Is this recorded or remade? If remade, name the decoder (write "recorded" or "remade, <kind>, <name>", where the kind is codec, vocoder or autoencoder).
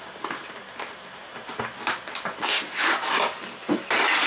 recorded